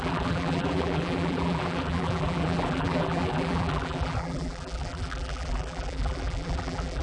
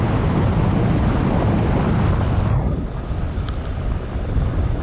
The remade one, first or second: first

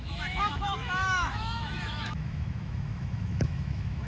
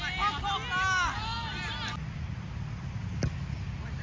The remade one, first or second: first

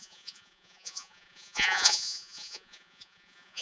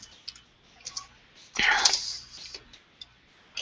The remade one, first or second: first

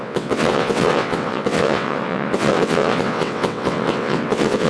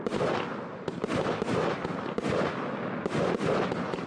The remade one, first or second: first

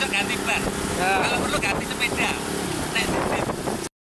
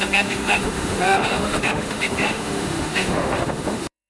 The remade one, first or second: second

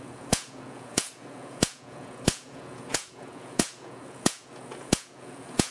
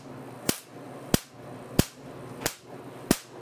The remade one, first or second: first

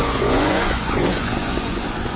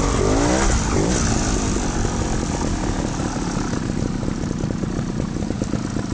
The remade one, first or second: first